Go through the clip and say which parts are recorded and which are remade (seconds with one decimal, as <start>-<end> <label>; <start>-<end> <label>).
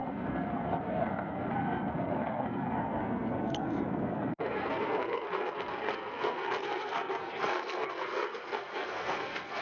0.0-9.6 remade